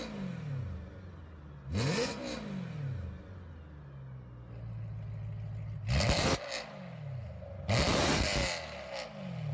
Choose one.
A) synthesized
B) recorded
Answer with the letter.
B